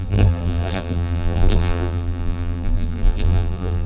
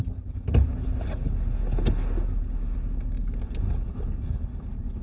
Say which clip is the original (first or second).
second